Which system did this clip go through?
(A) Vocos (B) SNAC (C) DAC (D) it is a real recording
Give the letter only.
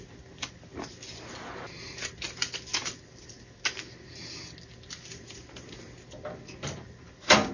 D